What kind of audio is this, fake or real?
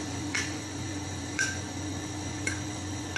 fake